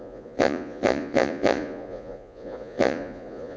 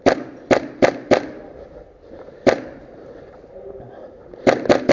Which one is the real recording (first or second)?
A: second